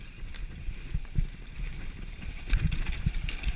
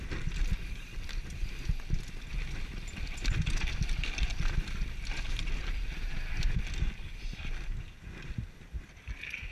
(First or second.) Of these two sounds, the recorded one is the second